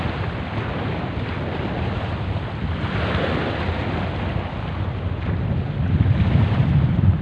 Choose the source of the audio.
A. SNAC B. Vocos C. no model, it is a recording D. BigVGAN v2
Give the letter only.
C